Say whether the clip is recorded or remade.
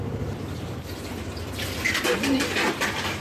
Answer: remade